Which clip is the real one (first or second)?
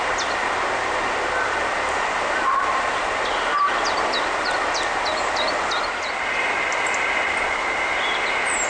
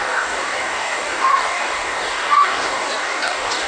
first